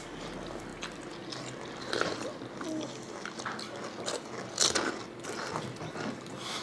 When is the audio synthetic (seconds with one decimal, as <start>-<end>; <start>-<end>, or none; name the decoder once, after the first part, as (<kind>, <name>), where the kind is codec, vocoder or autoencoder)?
none